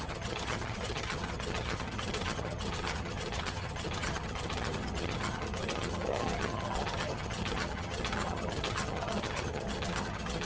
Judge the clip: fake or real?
fake